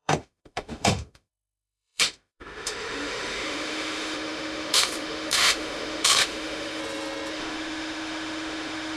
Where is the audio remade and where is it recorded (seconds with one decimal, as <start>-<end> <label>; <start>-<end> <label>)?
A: 0.0-6.8 remade; 6.8-7.3 recorded; 7.3-9.0 remade